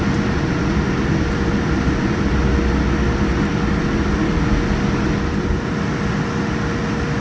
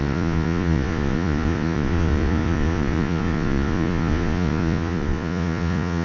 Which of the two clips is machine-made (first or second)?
second